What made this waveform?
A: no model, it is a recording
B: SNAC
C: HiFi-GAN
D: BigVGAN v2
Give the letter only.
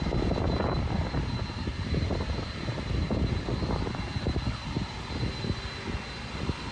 A